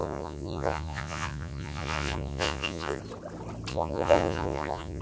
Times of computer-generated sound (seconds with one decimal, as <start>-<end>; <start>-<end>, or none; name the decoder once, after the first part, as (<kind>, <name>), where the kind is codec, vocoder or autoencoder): 0.0-3.0 (vocoder, Vocos); 3.7-5.0